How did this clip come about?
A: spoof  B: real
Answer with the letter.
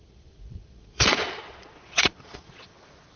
A